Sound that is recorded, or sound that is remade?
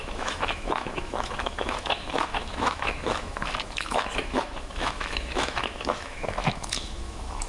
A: remade